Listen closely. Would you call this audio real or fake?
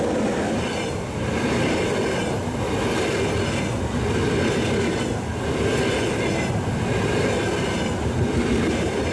real